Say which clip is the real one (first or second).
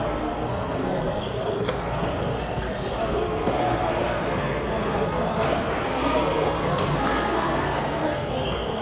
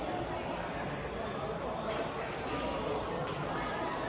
second